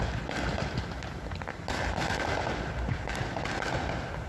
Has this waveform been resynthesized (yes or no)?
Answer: no